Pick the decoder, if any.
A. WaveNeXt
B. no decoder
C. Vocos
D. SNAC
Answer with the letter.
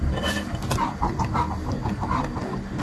B